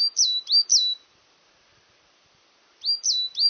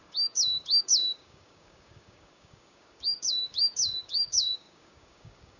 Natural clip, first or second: first